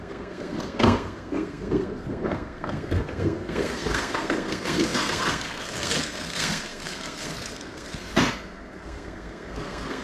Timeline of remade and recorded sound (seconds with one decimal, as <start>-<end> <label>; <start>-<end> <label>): 0.0-10.0 remade